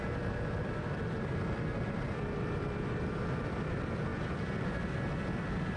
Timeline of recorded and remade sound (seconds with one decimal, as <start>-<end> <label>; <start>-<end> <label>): 0.0-4.1 remade; 4.1-5.3 recorded; 5.3-5.8 remade